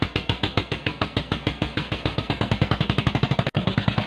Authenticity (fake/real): fake